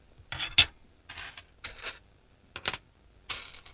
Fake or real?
real